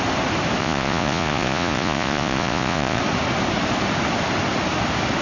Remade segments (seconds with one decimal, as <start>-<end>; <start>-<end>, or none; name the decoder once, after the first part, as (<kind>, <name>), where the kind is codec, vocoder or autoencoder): 0.6-3.0 (vocoder, Vocos)